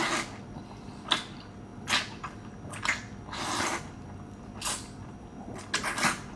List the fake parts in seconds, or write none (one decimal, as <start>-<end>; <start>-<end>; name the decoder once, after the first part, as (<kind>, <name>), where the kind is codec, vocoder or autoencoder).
none